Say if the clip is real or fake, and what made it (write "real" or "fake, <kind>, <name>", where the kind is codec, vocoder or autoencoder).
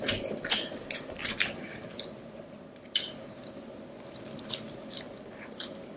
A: real